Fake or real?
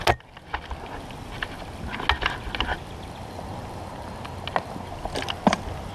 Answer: real